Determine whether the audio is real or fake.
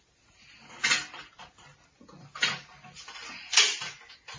real